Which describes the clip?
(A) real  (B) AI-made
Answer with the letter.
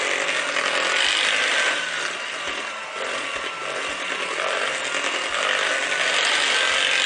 A